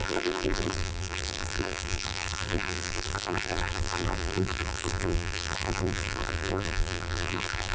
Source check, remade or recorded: remade